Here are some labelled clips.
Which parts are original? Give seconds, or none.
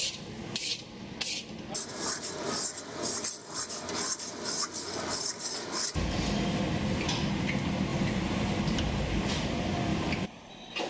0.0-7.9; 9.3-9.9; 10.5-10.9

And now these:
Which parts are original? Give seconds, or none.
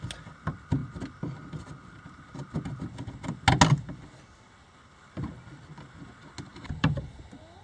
0.0-6.5; 7.1-7.6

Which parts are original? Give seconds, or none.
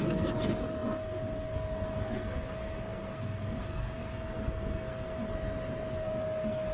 5.3-6.0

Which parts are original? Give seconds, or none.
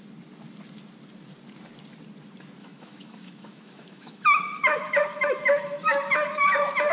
0.0-2.6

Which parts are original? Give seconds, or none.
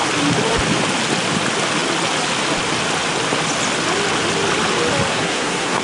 0.0-5.1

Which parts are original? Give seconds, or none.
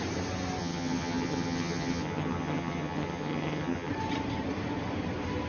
0.0-0.6; 3.9-5.5